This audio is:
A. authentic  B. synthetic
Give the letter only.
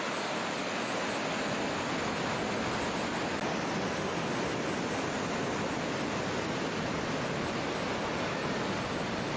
A